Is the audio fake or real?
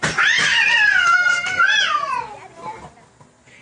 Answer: real